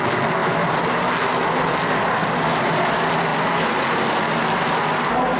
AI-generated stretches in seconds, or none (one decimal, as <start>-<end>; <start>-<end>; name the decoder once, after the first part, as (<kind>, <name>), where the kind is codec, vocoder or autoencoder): none